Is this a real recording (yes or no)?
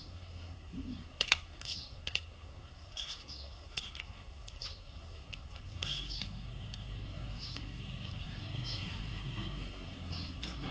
no